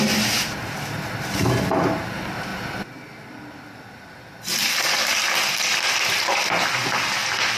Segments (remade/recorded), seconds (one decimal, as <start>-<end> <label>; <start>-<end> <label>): 0.0-7.6 recorded